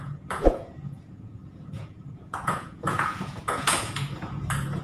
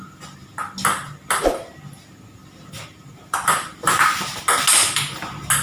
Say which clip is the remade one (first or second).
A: first